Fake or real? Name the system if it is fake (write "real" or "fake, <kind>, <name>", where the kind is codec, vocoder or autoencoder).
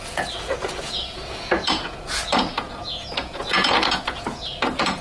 fake, vocoder, Vocos